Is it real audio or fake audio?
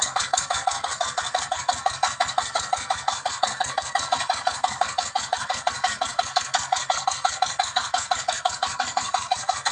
fake